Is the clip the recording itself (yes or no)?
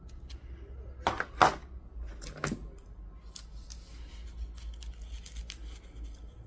yes